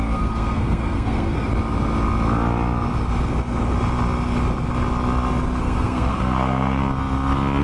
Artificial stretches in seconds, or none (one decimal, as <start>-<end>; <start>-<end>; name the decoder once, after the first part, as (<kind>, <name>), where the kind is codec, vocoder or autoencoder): 0.0-1.5 (codec, SNAC); 5.6-6.8